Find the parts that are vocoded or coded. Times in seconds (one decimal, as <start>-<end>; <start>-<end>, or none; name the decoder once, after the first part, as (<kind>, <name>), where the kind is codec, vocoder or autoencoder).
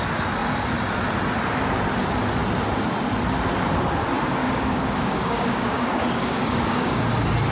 4.4-7.0 (codec, DAC)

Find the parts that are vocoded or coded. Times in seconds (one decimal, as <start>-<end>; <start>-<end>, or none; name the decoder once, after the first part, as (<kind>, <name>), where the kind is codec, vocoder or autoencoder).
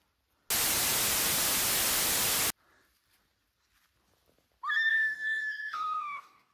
4.9-6.5 (codec, DAC)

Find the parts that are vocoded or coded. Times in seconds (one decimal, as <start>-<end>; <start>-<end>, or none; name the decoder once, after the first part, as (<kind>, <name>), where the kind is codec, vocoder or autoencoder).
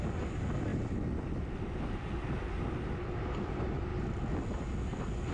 none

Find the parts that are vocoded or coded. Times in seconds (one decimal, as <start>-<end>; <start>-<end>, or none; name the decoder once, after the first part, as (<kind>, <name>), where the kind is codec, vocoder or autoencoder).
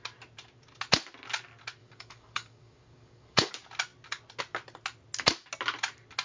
1.8-3.5 (codec, DAC)